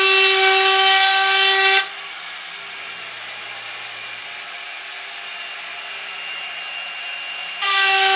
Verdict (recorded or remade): recorded